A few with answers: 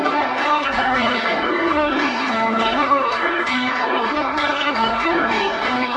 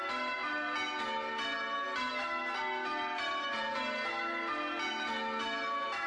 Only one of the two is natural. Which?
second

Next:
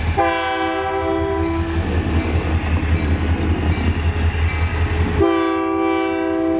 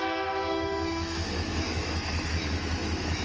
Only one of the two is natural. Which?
first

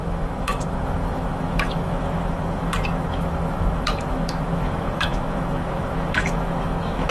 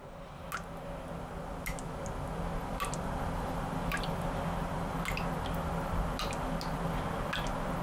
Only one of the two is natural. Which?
second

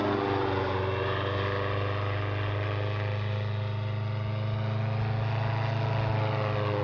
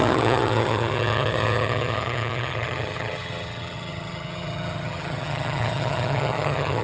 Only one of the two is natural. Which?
first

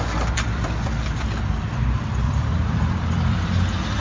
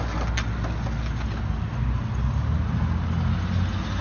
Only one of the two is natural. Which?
second